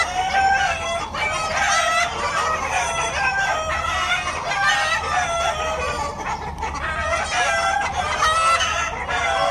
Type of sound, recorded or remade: recorded